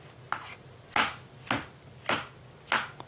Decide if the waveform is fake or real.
real